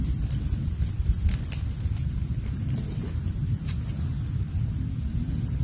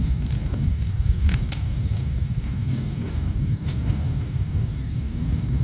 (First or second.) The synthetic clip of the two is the second